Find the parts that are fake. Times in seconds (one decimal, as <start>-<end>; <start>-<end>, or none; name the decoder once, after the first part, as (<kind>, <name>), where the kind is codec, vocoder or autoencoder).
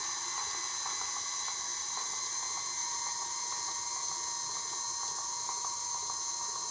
2.8-3.7 (vocoder, BigVGAN v2)